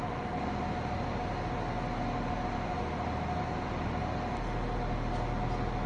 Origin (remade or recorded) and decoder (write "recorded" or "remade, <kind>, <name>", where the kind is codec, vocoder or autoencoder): recorded